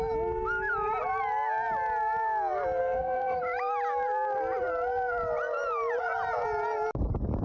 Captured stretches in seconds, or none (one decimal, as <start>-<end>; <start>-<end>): 0.0-2.8; 3.4-7.4